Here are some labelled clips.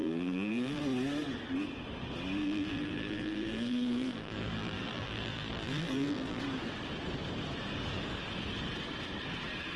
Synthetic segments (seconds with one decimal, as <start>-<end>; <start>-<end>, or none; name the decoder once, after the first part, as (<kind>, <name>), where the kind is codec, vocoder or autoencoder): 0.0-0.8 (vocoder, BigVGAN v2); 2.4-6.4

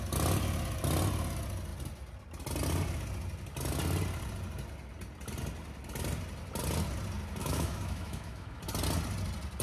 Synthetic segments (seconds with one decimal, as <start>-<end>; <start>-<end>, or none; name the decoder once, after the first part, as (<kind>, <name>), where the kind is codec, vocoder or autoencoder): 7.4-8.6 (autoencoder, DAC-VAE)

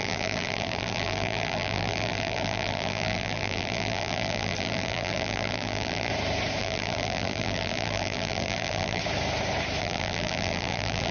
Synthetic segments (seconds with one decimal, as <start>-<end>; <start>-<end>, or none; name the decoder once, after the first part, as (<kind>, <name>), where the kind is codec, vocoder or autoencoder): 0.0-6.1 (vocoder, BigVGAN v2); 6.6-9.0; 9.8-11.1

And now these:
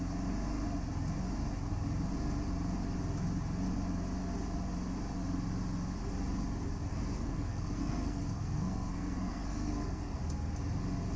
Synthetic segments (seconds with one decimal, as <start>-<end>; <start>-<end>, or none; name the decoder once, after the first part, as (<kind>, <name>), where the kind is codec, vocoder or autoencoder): 6.9-10.2 (codec, SNAC)